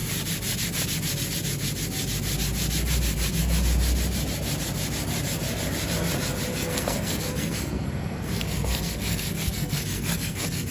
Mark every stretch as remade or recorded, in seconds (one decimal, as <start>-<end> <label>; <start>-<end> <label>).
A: 0.0-6.5 recorded; 6.5-10.7 remade